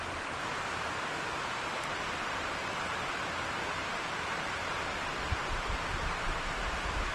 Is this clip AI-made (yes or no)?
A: yes